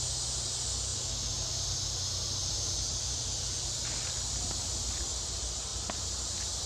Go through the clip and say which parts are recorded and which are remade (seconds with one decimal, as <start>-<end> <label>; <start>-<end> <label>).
0.0-2.4 recorded; 2.4-5.0 remade; 5.0-5.7 recorded; 5.7-6.3 remade; 6.3-6.7 recorded